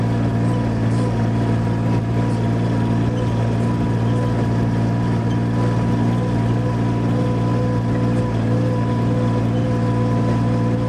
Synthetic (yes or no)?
no